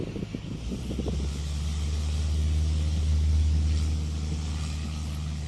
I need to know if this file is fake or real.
real